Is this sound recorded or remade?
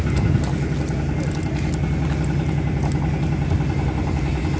recorded